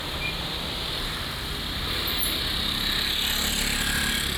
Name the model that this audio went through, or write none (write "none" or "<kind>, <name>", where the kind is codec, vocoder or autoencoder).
none